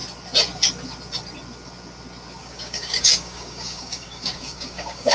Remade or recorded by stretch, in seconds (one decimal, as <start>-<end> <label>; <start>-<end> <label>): 0.0-2.4 recorded; 2.4-5.1 remade

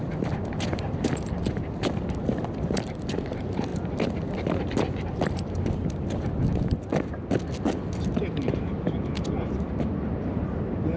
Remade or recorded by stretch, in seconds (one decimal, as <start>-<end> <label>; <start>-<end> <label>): 0.0-11.0 remade